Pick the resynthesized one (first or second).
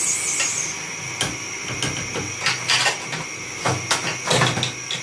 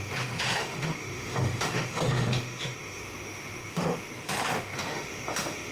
second